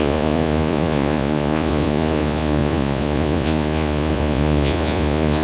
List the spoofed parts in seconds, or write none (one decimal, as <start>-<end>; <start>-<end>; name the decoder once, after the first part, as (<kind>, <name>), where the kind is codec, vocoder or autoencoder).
0.0-5.4 (vocoder, Vocos)